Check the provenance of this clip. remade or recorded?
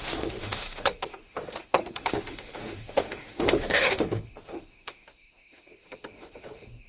remade